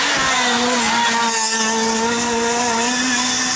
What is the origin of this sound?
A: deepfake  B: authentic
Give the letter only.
B